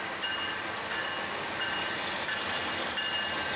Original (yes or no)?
yes